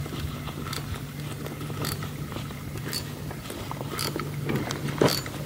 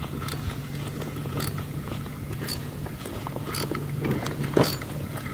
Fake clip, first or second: second